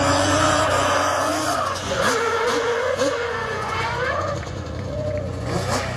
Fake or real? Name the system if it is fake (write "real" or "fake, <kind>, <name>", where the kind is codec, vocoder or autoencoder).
fake, vocoder, Vocos